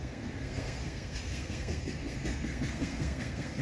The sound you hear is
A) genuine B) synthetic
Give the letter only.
B